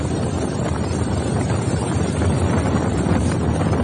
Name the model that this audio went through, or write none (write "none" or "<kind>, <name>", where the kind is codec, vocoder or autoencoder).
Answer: none